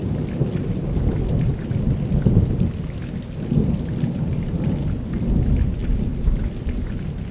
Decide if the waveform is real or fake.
real